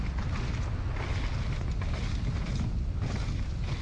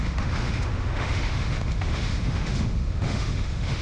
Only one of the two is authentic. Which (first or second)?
first